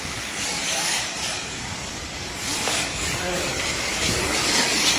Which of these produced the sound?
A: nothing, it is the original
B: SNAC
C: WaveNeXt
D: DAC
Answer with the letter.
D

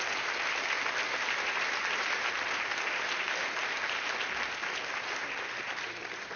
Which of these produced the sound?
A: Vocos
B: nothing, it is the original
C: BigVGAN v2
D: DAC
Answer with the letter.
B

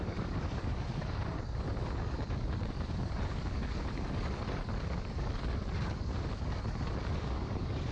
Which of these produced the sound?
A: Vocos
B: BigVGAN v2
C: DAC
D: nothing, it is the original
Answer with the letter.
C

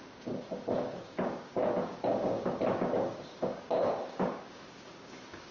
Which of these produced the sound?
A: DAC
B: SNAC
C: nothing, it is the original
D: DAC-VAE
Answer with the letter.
A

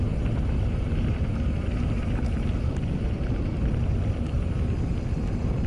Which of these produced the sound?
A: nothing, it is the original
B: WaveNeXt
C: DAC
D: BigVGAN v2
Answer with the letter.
A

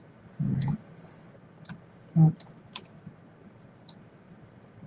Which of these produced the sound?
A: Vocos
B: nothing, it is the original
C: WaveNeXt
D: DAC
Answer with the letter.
B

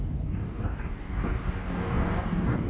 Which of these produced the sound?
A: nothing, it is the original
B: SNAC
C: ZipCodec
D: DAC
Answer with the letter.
D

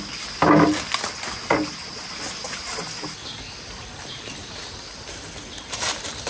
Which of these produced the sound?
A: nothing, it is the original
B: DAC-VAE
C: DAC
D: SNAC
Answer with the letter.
A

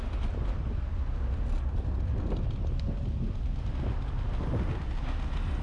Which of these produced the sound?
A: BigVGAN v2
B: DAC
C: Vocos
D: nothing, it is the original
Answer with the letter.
D